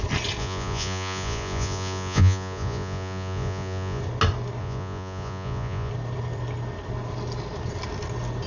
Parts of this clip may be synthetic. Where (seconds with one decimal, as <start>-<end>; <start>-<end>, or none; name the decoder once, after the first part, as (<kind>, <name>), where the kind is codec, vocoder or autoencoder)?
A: 0.4-4.0 (vocoder, Vocos); 4.6-5.9